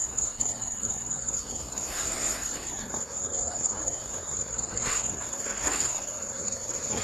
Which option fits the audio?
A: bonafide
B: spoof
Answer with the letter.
B